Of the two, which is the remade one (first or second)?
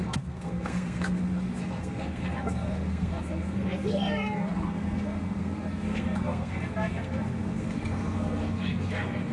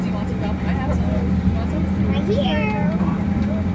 first